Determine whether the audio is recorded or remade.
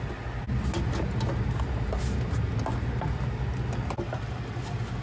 recorded